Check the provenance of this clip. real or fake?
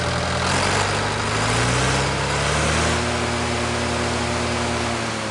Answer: real